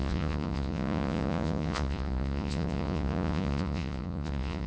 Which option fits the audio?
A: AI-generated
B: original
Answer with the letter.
A